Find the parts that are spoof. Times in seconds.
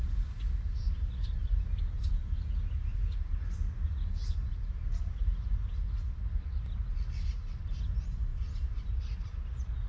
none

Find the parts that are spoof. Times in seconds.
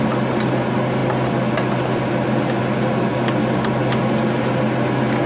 none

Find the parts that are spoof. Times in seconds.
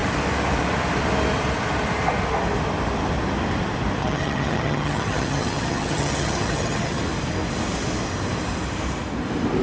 4.0-7.0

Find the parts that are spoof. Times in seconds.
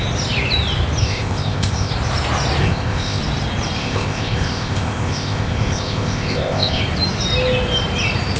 1.0-1.9; 2.6-3.2; 3.8-6.8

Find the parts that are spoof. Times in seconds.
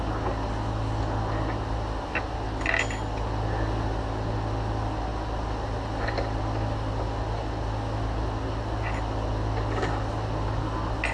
none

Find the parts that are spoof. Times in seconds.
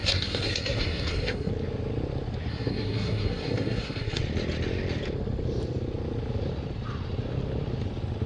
0.0-1.5; 2.5-4.2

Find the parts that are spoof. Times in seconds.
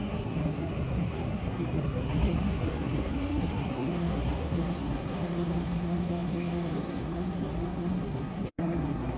0.0-9.2